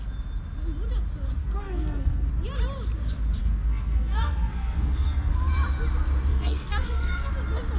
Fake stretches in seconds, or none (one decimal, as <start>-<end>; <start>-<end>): 1.4-2.3; 3.4-5.4; 6.3-7.3